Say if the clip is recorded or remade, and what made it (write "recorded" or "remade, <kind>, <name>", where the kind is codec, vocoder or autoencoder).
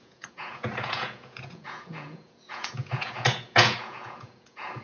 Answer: remade, vocoder, Vocos